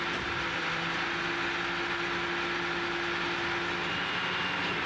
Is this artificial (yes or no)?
no